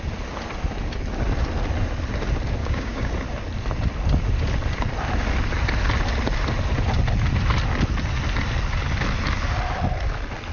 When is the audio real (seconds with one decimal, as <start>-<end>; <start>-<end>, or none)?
0.0-2.6; 3.1-10.5